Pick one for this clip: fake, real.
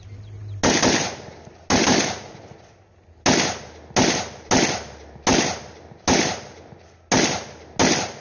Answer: real